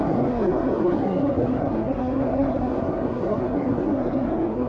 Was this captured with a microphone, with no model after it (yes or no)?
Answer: no